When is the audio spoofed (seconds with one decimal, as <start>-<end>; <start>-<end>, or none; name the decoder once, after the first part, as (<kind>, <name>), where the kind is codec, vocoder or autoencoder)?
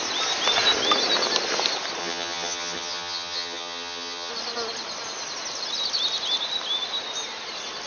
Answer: 2.0-4.3 (vocoder, HiFi-GAN)